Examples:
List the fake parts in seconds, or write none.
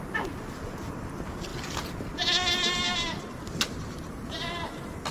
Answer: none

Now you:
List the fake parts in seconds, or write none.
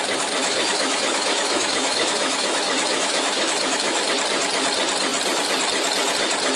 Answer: 0.4-4.1 (autoencoder, DAC-VAE)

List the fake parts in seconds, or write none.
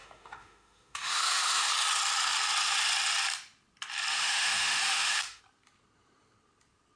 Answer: 0.0-1.7 (autoencoder, DAC-VAE); 4.1-5.4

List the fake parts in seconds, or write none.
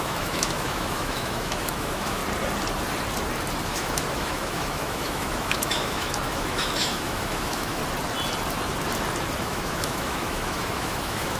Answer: 0.0-2.2 (autoencoder, DAC-VAE); 3.6-7.8; 9.4-11.4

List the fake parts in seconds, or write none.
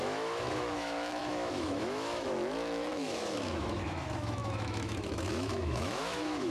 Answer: 0.0-6.5 (autoencoder, DAC-VAE)